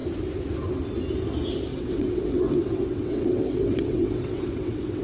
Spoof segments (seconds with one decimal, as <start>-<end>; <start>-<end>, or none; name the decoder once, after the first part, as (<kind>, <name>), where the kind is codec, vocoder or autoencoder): 1.7-5.0 (vocoder, WaveNeXt)